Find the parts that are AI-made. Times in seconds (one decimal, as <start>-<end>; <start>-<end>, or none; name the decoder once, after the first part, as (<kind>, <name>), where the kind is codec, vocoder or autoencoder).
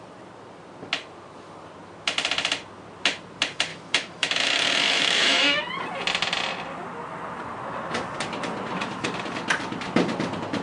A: 3.7-5.6 (autoencoder, DAC-VAE)